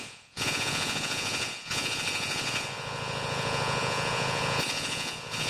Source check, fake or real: fake